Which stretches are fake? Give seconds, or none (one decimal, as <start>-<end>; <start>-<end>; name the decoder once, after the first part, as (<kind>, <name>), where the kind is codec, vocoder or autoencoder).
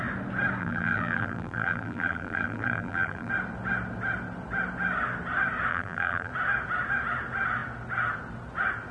0.6-3.3 (vocoder, BigVGAN v2); 5.7-6.3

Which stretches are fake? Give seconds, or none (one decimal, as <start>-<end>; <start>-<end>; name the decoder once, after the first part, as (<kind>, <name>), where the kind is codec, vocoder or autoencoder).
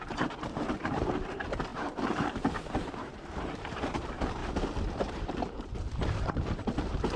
0.0-4.4 (vocoder, BigVGAN v2); 5.0-7.2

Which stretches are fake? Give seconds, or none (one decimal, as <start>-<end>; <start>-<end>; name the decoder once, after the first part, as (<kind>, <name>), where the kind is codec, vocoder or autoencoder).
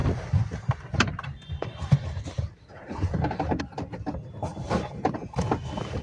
0.0-3.6 (vocoder, BigVGAN v2); 4.5-5.5